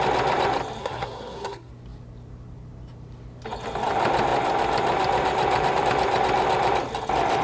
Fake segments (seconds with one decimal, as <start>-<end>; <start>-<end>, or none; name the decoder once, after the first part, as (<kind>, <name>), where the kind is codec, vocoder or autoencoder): 0.8-1.7 (codec, SNAC)